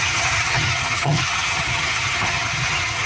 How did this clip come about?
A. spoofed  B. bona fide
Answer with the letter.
A